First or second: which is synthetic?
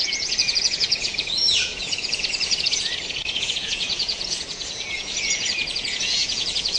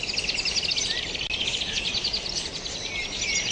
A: first